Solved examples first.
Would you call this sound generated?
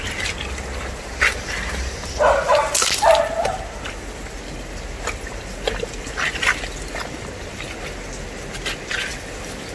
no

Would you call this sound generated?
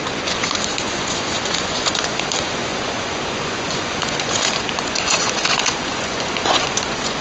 yes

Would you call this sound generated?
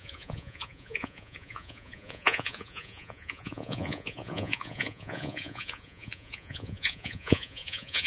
yes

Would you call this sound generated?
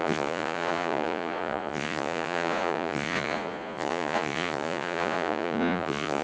yes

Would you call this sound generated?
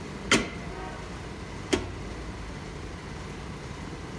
no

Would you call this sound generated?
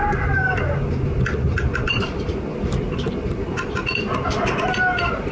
no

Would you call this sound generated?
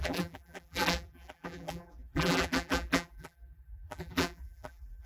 yes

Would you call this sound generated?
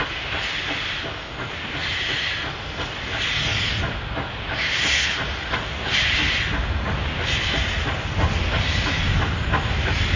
no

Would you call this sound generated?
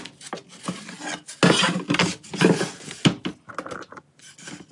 no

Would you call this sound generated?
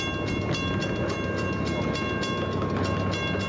no